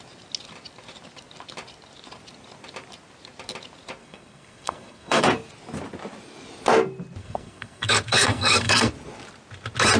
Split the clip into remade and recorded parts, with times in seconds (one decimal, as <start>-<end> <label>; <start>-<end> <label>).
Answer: 0.0-4.0 recorded; 4.0-5.2 remade; 5.2-7.2 recorded; 7.2-8.9 remade; 8.9-10.0 recorded

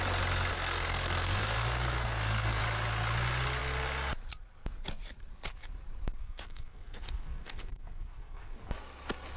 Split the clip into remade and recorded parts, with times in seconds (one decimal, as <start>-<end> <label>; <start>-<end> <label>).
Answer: 0.0-0.5 recorded; 0.5-2.6 remade; 2.6-6.2 recorded; 6.2-8.7 remade; 8.7-9.4 recorded

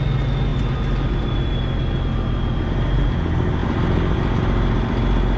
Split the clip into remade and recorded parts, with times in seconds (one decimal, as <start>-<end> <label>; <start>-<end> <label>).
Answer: 0.0-5.4 recorded

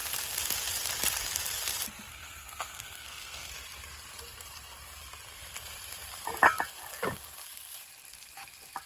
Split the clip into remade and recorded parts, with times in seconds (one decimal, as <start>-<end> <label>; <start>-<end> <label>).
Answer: 0.0-2.1 recorded; 2.1-3.5 remade; 3.5-8.9 recorded

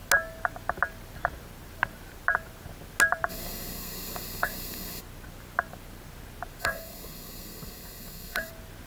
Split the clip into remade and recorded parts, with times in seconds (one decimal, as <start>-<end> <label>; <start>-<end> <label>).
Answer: 0.0-3.3 recorded; 3.3-5.0 remade; 5.0-6.6 recorded; 6.6-8.5 remade; 8.5-8.9 recorded

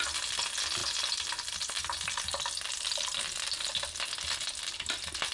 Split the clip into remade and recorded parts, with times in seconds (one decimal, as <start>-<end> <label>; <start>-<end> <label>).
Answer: 0.0-5.3 recorded

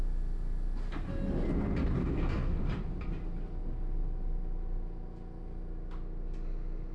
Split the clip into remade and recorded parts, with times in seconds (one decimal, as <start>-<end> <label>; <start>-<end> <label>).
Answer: 0.0-2.0 recorded; 2.0-2.6 remade; 2.6-6.9 recorded

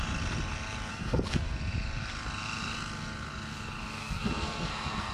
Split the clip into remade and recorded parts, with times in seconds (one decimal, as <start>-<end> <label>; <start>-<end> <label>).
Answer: 0.0-0.9 recorded; 0.9-1.5 remade; 1.5-4.0 recorded; 4.0-5.1 remade